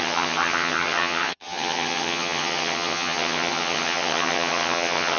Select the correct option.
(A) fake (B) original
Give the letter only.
A